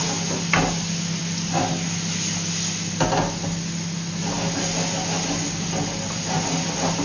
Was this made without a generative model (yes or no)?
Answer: yes